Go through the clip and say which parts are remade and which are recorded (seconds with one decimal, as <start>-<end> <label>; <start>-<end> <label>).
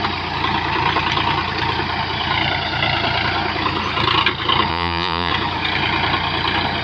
0.0-4.7 recorded; 4.7-5.3 remade; 5.3-6.8 recorded